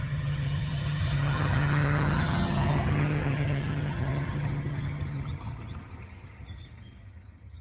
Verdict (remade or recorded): remade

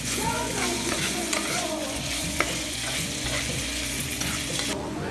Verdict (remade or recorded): remade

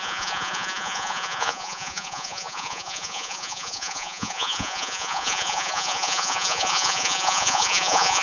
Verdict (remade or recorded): remade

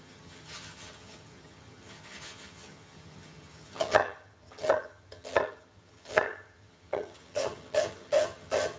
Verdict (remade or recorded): remade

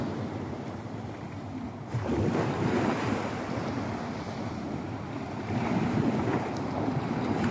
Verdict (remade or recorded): recorded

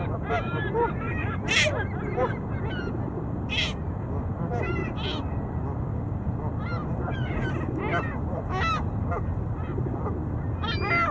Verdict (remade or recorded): recorded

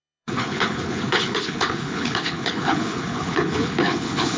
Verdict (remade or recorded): remade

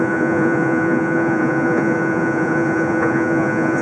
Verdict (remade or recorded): remade